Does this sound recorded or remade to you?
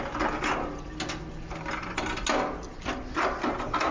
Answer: recorded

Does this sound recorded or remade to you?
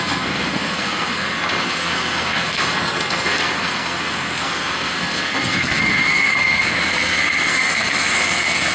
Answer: remade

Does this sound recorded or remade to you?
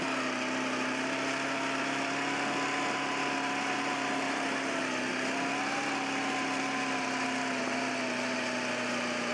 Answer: recorded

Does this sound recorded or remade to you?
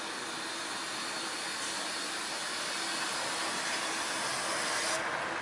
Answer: recorded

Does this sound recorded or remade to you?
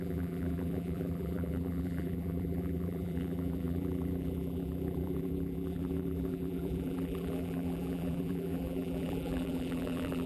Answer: remade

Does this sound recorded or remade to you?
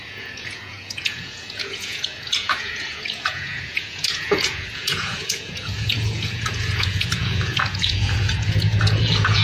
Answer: remade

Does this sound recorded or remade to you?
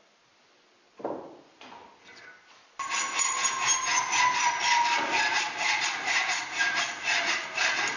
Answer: recorded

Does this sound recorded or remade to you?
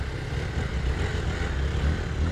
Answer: recorded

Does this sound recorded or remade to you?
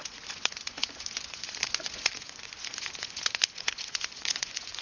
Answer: remade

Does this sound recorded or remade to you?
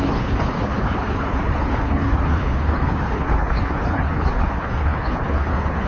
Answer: remade